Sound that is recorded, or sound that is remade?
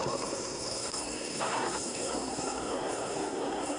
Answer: remade